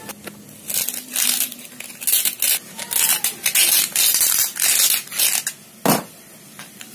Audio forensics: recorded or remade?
recorded